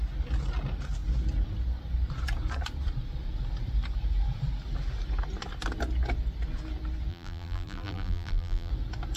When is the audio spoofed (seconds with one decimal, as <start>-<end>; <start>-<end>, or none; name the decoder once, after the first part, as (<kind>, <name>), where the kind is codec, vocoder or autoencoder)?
7.1-8.7 (vocoder, BigVGAN v2)